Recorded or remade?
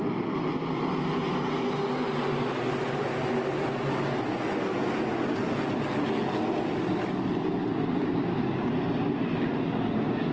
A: recorded